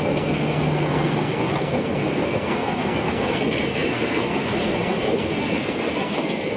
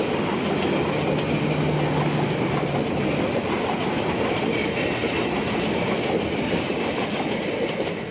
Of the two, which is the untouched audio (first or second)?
second